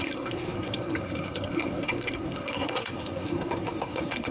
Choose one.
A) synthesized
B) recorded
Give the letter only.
A